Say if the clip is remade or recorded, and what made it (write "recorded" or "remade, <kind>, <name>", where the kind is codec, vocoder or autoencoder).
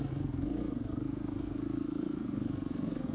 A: remade, codec, SNAC